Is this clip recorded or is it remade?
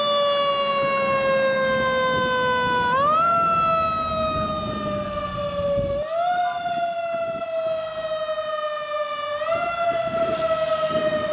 recorded